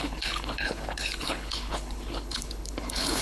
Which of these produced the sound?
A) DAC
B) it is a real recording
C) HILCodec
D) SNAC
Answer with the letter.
C